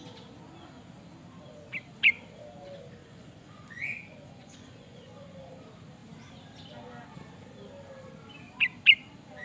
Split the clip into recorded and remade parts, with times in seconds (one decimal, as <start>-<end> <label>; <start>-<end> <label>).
0.0-3.0 recorded; 3.0-5.5 remade; 5.5-9.4 recorded